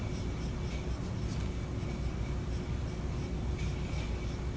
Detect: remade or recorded recorded